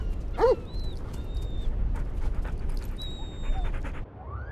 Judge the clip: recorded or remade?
recorded